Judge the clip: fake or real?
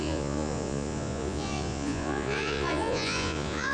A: fake